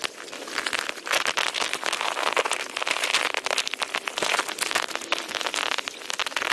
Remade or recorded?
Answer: recorded